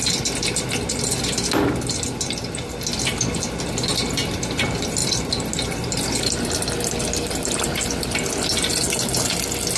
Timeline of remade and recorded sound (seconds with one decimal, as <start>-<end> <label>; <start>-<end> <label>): 0.0-9.8 recorded